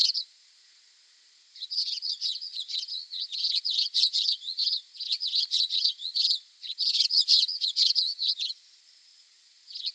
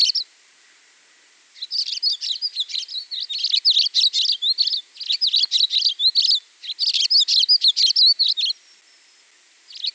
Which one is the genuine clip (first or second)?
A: second